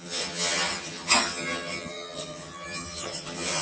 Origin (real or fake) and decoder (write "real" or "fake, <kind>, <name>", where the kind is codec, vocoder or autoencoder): fake, vocoder, HiFi-GAN